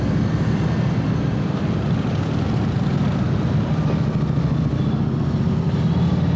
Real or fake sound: real